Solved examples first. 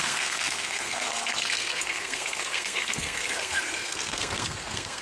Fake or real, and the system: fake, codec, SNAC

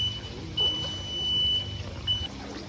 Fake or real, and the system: real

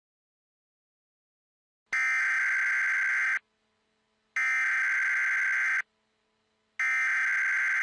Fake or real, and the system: real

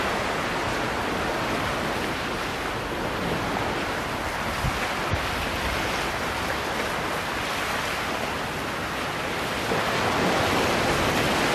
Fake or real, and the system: real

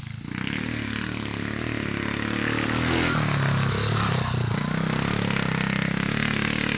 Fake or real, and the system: real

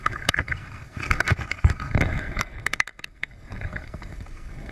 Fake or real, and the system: fake, codec, SNAC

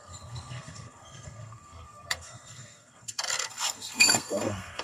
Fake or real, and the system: fake, codec, SNAC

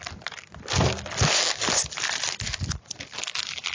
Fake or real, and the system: real